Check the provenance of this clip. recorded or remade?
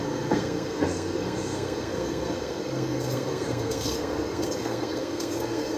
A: remade